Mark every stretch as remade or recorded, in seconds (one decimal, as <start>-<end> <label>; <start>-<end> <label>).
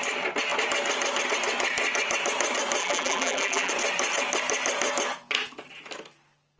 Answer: 0.0-2.8 recorded; 2.8-3.7 remade; 3.7-6.6 recorded